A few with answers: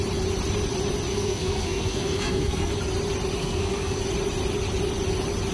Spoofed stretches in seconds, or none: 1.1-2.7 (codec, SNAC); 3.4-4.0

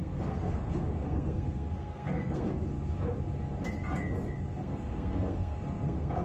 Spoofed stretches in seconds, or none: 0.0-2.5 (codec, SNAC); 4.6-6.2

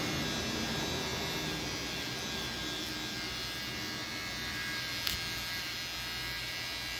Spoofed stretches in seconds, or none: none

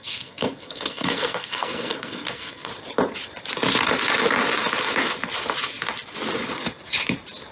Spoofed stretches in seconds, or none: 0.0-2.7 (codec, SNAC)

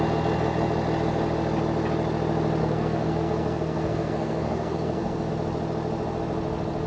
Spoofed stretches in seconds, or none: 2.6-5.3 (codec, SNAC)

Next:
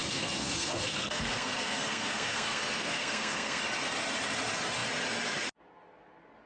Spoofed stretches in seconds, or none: 0.0-3.6 (codec, SNAC)

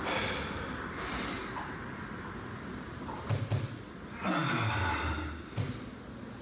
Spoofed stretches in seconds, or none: none

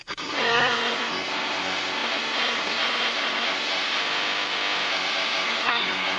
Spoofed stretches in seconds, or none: 0.0-4.0 (codec, SNAC); 4.9-6.2